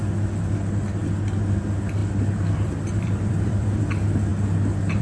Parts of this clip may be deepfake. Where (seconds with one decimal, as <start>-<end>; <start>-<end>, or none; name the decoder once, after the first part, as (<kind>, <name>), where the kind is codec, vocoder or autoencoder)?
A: 2.0-3.9 (vocoder, BigVGAN v2)